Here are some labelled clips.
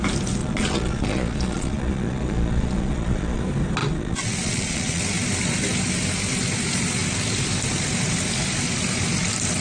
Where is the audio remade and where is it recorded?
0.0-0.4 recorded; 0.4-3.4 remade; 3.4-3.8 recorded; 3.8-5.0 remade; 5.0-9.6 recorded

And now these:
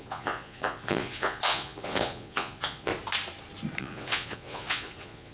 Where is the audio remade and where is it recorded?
0.0-2.9 remade; 2.9-3.8 recorded; 3.8-5.3 remade

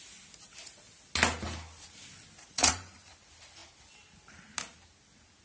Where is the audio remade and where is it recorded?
0.0-2.5 recorded; 2.5-3.1 remade; 3.1-5.4 recorded

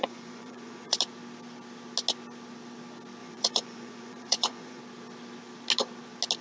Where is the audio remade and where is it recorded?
0.0-1.0 remade; 1.0-3.2 recorded; 3.2-4.8 remade; 4.8-6.4 recorded

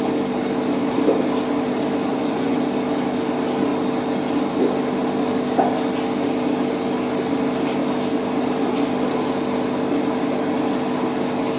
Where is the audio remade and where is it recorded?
0.0-2.1 recorded; 2.1-2.6 remade; 2.6-11.6 recorded

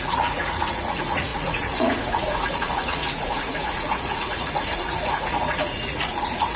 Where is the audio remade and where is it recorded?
0.0-6.6 remade

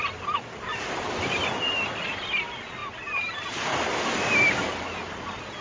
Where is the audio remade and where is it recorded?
0.0-5.6 recorded

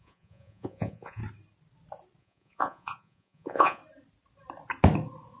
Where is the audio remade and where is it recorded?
0.0-1.2 remade; 1.2-2.2 recorded; 2.2-3.8 remade; 3.8-5.4 recorded